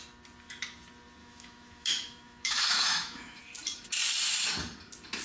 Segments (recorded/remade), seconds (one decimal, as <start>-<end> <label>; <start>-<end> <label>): 0.0-1.2 recorded; 1.2-3.4 remade; 3.4-5.2 recorded